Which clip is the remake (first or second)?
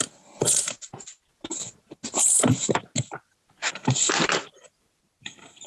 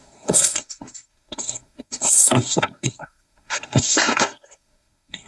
second